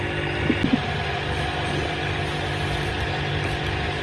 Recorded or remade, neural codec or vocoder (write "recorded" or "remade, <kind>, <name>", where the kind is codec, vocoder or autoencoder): recorded